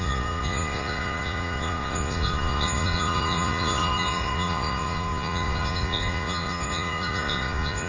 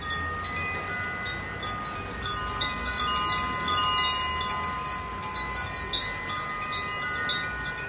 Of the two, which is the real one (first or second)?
second